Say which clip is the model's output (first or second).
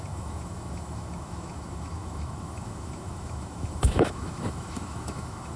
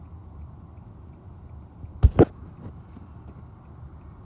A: first